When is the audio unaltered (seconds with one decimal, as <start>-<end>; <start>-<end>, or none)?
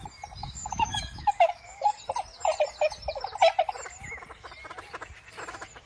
0.0-0.4; 1.9-5.9